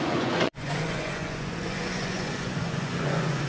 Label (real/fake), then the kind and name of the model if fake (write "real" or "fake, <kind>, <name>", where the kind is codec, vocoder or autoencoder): fake, vocoder, Vocos